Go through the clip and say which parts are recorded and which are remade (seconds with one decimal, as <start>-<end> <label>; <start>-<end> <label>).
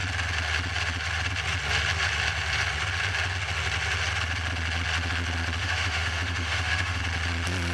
0.0-5.6 recorded; 5.6-7.0 remade; 7.0-7.7 recorded